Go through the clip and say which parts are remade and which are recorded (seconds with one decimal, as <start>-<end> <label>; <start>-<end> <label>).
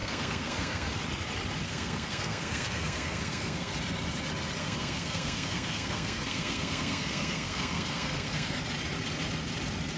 0.0-1.0 remade; 1.0-1.6 recorded; 1.6-3.7 remade; 3.7-4.6 recorded; 4.6-8.6 remade; 8.6-10.0 recorded